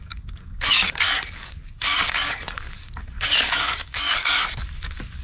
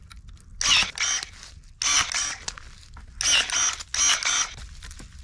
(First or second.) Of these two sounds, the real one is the second